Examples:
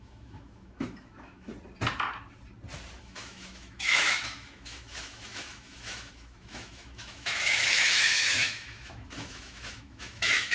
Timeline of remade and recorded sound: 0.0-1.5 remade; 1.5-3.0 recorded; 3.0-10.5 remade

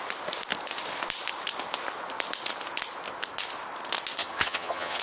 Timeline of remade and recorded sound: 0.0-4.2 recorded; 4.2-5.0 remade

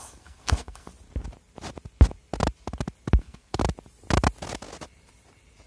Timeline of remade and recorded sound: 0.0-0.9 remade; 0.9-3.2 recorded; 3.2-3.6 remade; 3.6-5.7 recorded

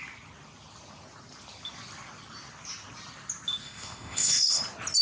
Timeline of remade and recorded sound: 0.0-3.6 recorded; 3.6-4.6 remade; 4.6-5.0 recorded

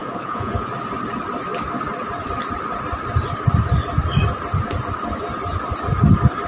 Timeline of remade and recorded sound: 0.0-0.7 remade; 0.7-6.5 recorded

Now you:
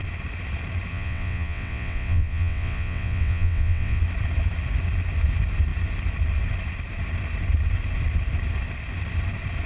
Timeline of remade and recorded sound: 0.0-0.9 recorded; 0.9-4.0 remade; 4.0-9.7 recorded

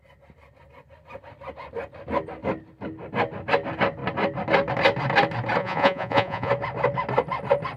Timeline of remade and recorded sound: 0.0-5.6 recorded; 5.6-6.5 remade; 6.5-7.8 recorded

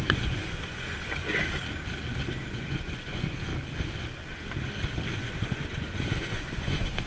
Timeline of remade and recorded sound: 0.0-1.4 remade; 1.4-2.3 recorded; 2.3-3.5 remade; 3.5-5.1 recorded; 5.1-7.1 remade